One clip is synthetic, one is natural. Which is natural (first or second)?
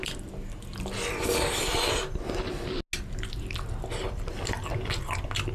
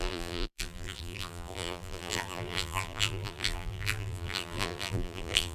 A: first